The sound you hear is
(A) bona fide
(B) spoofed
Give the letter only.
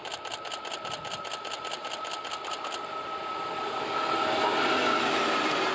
A